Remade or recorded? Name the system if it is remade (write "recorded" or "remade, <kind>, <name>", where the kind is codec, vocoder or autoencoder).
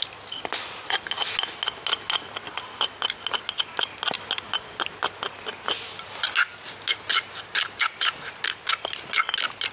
recorded